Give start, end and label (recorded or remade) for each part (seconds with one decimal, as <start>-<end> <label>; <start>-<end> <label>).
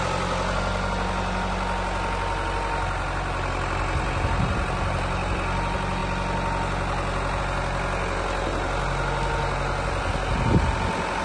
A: 0.0-11.2 recorded